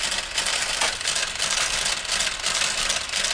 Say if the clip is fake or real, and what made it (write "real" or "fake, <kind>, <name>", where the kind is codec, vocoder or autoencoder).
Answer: real